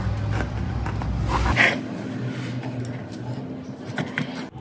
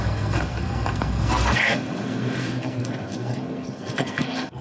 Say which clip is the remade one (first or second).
second